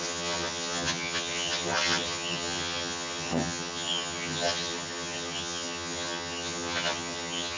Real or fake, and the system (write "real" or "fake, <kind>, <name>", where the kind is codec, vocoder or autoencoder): fake, vocoder, HiFi-GAN